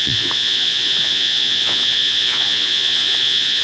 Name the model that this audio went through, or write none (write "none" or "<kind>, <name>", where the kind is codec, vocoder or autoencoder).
vocoder, Vocos